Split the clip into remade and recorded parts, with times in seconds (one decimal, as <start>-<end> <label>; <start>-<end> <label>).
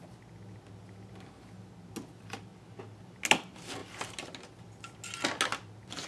0.0-6.1 recorded